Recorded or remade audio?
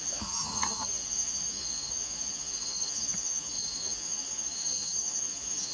remade